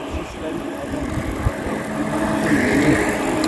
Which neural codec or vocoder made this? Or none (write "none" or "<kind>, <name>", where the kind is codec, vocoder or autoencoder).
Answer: none